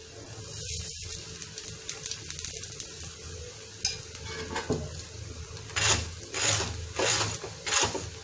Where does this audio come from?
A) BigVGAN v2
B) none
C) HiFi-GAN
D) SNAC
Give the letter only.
B